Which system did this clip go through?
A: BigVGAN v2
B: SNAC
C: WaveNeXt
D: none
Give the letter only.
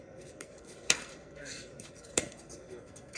B